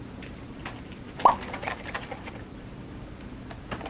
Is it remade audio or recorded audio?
recorded